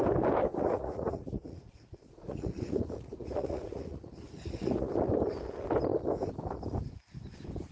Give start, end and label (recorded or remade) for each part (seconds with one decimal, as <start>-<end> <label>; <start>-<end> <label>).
0.0-0.5 recorded; 0.5-4.9 remade; 4.9-7.7 recorded

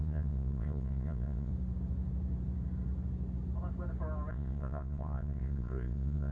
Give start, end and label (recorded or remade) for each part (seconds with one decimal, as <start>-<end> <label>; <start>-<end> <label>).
0.0-1.5 remade; 1.5-4.3 recorded; 4.3-6.3 remade

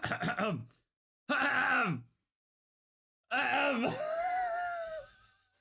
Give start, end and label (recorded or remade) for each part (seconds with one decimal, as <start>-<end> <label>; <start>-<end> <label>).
0.0-5.6 recorded

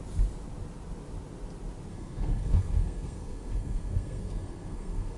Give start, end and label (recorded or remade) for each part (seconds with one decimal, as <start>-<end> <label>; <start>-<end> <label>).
0.0-1.9 recorded; 1.9-5.2 remade

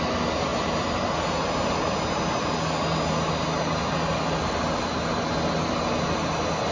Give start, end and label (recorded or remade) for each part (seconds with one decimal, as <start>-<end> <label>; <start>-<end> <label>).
0.0-6.7 recorded

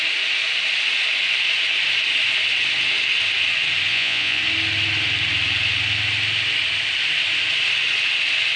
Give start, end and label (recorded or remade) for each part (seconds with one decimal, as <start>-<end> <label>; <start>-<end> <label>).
0.0-3.9 recorded; 3.9-4.4 remade; 4.4-8.6 recorded

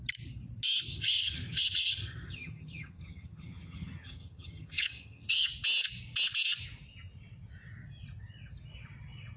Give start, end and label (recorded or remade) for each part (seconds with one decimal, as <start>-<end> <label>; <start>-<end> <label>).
0.0-0.9 recorded; 0.9-5.5 remade; 5.5-9.4 recorded

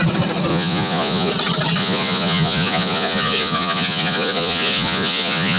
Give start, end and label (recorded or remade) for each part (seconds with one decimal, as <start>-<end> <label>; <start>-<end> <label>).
0.0-0.5 recorded; 0.5-1.3 remade; 1.3-1.8 recorded; 1.8-5.6 remade